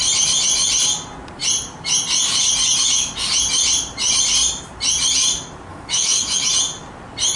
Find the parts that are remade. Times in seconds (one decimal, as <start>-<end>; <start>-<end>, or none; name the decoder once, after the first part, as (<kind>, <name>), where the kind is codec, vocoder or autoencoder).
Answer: 5.7-6.5 (autoencoder, DAC-VAE)